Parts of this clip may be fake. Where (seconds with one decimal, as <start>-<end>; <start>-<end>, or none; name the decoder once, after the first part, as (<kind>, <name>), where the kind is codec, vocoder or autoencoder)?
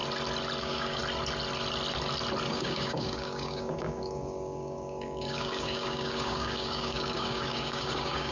0.6-1.0 (codec, DAC); 2.5-8.3